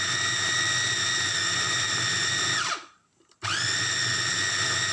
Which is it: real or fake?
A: real